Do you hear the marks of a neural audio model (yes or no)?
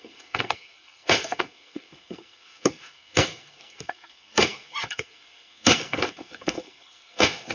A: yes